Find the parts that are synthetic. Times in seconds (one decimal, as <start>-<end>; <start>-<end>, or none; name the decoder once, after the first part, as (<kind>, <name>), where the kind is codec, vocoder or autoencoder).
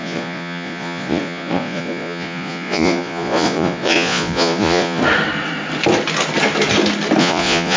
0.0-5.0 (vocoder, Vocos); 7.2-7.8